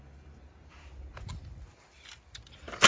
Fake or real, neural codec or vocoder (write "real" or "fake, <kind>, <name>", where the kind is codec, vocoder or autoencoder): real